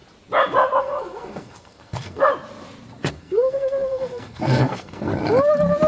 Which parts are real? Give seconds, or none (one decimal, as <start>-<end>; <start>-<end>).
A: 0.0-0.8; 2.3-3.1; 5.1-5.9